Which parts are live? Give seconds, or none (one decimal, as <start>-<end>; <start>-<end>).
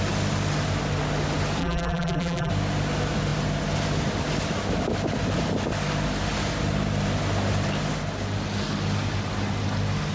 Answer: 0.0-1.6; 2.5-10.1